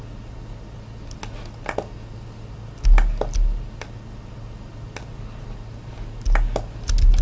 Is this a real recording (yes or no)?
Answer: yes